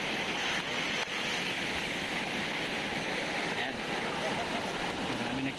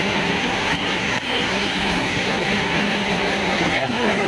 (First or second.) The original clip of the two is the first